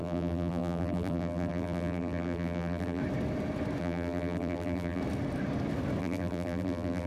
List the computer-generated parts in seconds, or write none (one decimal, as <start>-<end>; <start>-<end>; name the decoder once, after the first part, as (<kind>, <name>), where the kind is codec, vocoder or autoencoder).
0.0-3.0 (vocoder, BigVGAN v2); 3.8-5.0; 6.0-7.1